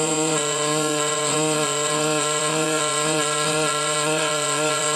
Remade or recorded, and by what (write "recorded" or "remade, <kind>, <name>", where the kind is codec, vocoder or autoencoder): remade, vocoder, Vocos